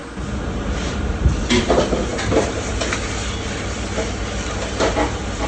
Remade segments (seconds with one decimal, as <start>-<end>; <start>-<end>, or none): none